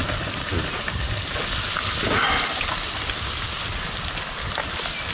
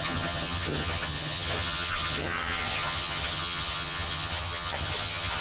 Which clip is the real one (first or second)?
first